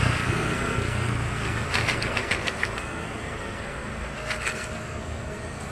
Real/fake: fake